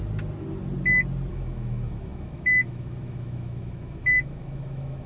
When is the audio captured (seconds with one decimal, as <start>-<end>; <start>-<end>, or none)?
0.0-1.3